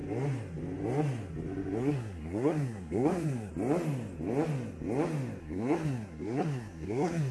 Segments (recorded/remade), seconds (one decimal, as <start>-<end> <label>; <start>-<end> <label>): 0.0-1.8 recorded; 1.8-3.5 remade; 3.5-5.4 recorded; 5.4-7.3 remade